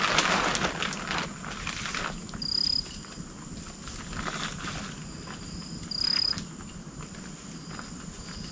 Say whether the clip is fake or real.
real